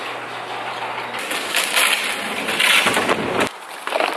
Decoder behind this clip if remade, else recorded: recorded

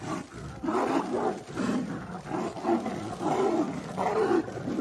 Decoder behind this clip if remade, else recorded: recorded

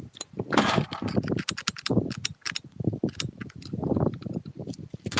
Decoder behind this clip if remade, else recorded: remade, vocoder, BigVGAN v2